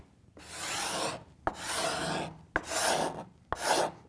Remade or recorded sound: recorded